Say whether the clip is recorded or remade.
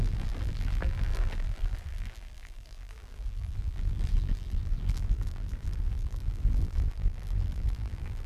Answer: remade